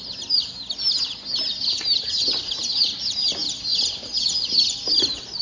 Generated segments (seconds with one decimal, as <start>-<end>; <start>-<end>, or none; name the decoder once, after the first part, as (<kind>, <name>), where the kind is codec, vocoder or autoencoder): none